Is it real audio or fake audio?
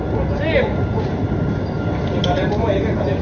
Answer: real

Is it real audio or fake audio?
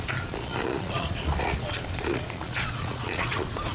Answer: fake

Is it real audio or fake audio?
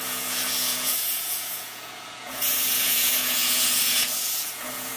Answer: fake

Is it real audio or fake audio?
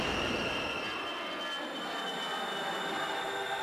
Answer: real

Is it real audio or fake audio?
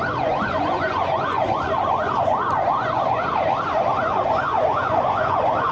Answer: fake